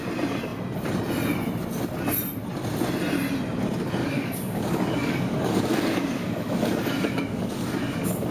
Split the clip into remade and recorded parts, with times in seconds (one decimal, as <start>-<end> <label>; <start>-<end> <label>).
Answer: 0.0-4.0 recorded; 4.0-8.3 remade